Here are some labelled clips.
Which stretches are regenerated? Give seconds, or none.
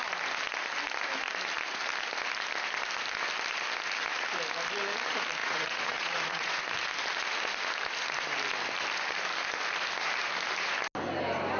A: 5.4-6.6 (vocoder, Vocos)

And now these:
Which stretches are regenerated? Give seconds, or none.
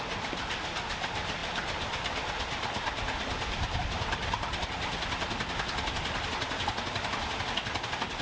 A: none